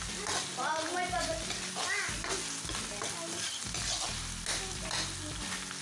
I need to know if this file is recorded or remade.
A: recorded